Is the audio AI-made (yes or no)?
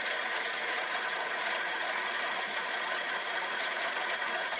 yes